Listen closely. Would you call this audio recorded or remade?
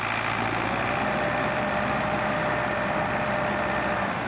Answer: recorded